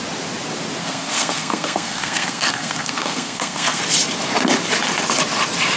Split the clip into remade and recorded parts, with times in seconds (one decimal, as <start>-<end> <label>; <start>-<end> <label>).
0.0-0.8 recorded; 0.8-3.8 remade; 3.8-5.8 recorded